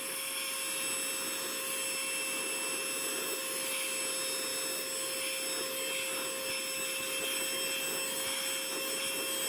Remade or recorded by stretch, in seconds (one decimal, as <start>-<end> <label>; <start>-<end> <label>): 0.0-9.5 recorded